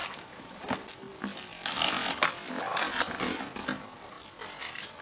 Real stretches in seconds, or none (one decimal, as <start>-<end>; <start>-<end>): 0.5-5.0